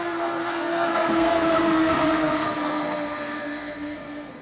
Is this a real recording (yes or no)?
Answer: no